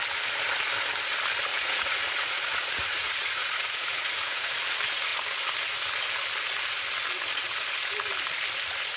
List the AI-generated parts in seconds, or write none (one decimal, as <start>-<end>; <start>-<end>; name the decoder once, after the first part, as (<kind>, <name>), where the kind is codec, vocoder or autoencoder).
1.5-4.5 (vocoder, Vocos)